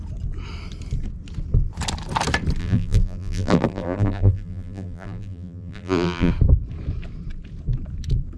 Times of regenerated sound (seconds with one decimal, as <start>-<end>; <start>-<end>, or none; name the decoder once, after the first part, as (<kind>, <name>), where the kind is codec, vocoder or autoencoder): 2.6-6.3 (vocoder, BigVGAN v2)